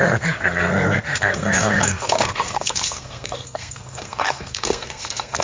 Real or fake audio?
fake